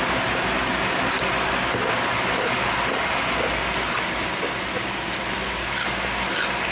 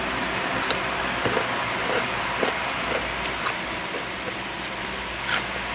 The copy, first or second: second